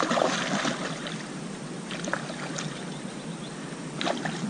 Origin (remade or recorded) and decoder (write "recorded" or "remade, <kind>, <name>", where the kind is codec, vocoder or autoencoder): recorded